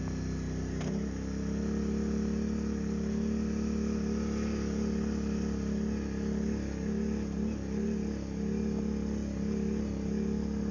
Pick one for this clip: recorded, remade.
recorded